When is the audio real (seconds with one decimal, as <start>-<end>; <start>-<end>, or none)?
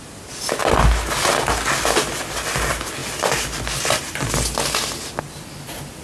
0.0-6.0